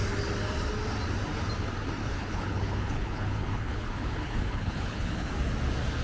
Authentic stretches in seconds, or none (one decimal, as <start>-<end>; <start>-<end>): 0.0-2.0; 5.3-6.0